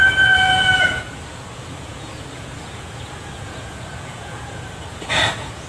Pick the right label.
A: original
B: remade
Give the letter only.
B